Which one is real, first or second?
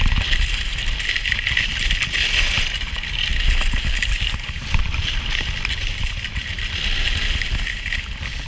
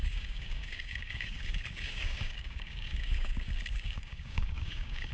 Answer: first